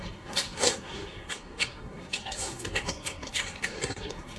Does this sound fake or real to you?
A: fake